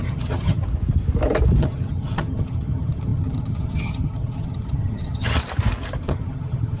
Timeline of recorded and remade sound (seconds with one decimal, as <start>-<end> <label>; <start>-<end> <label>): 0.0-0.6 remade; 0.6-1.6 recorded; 1.6-5.4 remade; 5.4-6.0 recorded; 6.0-6.8 remade